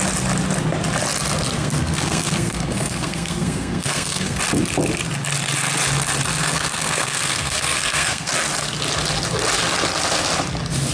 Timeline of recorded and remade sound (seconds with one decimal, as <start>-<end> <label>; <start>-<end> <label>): 0.0-1.6 recorded; 1.6-4.4 remade; 4.4-6.4 recorded; 6.4-8.3 remade; 8.3-10.9 recorded